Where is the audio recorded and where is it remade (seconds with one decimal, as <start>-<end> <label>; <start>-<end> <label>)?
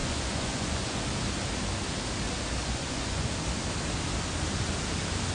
0.0-1.0 remade; 1.0-2.6 recorded; 2.6-3.3 remade; 3.3-5.3 recorded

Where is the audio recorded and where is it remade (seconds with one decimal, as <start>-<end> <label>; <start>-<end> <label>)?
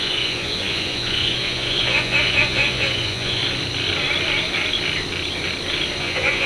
0.0-3.4 remade; 3.4-6.0 recorded; 6.0-6.5 remade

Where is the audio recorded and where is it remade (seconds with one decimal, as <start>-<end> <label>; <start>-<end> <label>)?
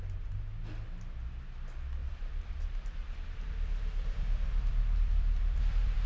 0.0-2.0 recorded; 2.0-6.1 remade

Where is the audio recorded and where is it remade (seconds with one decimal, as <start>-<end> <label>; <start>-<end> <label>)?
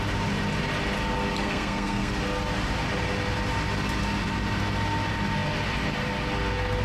0.0-1.4 recorded; 1.4-2.1 remade; 2.1-6.8 recorded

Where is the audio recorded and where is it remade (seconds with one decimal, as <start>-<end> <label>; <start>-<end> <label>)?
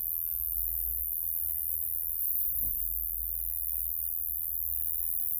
0.0-2.2 recorded; 2.2-2.8 remade; 2.8-5.4 recorded